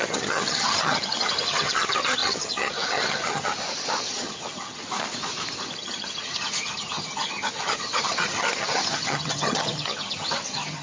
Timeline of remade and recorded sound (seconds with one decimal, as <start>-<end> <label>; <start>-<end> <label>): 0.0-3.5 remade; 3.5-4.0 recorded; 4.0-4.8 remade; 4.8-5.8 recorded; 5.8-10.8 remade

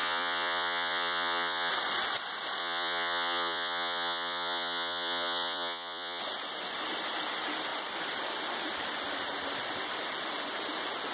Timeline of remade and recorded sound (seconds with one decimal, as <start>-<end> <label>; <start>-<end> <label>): 0.0-1.7 remade; 1.7-2.6 recorded; 2.6-6.2 remade; 6.2-11.1 recorded

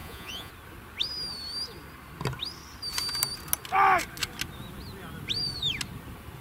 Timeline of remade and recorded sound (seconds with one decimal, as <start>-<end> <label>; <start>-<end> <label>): 0.0-0.5 remade; 0.5-6.4 recorded